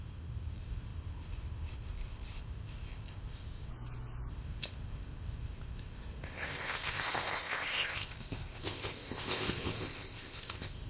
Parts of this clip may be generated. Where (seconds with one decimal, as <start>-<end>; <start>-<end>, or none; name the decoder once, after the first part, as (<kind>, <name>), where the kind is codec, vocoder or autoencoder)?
0.0-3.7 (codec, ZipCodec); 4.3-10.9